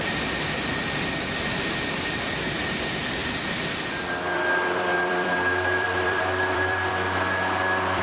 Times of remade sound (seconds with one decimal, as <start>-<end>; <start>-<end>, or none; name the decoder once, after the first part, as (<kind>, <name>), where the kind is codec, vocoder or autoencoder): 3.2-8.0 (vocoder, BigVGAN v2)

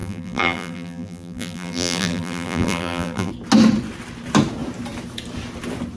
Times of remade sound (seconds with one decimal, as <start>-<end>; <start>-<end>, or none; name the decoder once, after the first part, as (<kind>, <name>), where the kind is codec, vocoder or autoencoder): 0.0-3.3 (vocoder, BigVGAN v2)

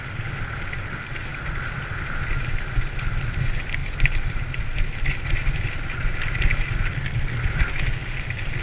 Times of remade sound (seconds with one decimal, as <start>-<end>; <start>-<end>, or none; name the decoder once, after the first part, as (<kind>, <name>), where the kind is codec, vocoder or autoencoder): 1.3-2.3 (vocoder, BigVGAN v2)